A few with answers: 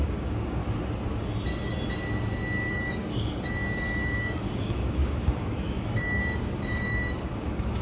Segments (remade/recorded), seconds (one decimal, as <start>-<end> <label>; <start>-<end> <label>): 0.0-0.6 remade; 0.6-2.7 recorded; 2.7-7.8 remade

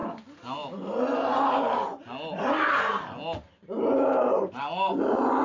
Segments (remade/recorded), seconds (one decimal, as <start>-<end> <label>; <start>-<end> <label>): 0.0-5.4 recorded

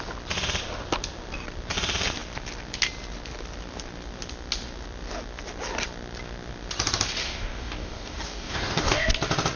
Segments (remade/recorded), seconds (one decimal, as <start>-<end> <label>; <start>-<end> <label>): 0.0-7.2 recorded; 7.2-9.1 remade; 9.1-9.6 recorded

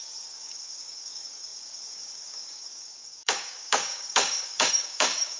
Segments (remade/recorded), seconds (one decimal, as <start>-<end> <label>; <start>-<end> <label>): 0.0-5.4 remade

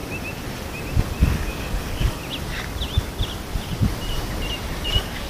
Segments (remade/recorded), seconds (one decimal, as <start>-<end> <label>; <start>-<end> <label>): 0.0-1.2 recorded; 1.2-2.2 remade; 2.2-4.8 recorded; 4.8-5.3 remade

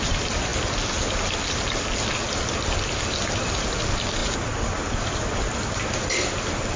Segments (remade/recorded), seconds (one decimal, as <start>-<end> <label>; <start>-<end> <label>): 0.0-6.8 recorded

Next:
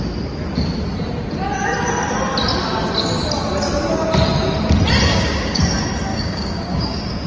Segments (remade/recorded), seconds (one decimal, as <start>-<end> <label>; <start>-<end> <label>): 0.0-5.1 recorded; 5.1-5.6 remade; 5.6-6.1 recorded; 6.1-7.3 remade